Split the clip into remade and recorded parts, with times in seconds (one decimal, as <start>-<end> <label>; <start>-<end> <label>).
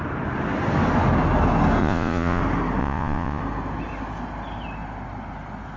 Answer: 0.0-1.8 recorded; 1.8-2.4 remade; 2.4-2.8 recorded; 2.8-3.4 remade; 3.4-5.8 recorded